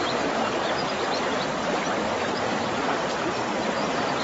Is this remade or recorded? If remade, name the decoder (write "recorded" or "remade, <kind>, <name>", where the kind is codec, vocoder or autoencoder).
remade, vocoder, BigVGAN v2